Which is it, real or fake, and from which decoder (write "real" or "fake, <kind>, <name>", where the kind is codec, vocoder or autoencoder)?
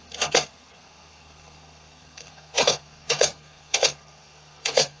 fake, codec, SNAC